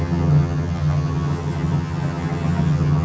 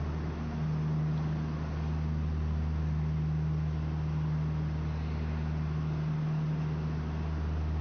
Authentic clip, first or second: second